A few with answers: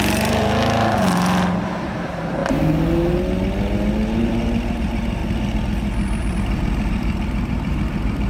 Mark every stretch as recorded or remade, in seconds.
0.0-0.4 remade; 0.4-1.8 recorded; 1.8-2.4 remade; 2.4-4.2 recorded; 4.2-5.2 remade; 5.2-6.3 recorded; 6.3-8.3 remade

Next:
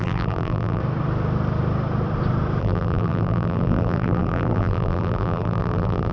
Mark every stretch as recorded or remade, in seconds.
0.0-0.8 remade; 0.8-2.6 recorded; 2.6-6.1 remade

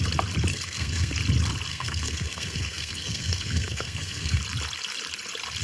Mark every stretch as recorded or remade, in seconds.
0.0-0.5 recorded; 0.5-1.1 remade; 1.1-1.7 recorded; 1.7-4.4 remade; 4.4-5.6 recorded

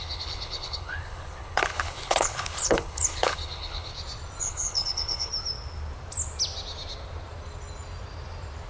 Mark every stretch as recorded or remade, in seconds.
0.0-3.9 remade; 3.9-4.4 recorded; 4.4-5.3 remade; 5.3-8.7 recorded